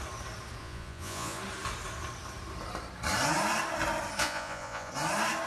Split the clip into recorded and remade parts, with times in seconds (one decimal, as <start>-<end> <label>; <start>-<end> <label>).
0.0-0.6 recorded; 0.6-1.4 remade; 1.4-4.2 recorded; 4.2-4.9 remade; 4.9-5.5 recorded